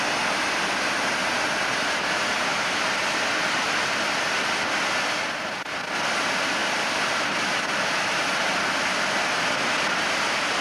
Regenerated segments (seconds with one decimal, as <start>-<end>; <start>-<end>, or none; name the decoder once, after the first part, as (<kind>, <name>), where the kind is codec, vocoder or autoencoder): none